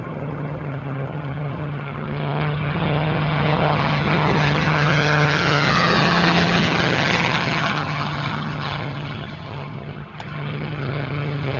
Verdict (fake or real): fake